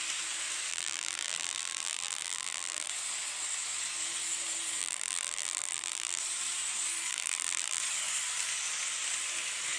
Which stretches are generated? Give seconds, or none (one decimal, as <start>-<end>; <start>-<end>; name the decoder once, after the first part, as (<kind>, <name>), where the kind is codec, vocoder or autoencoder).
0.7-2.9 (vocoder, BigVGAN v2); 4.8-6.2; 7.1-7.8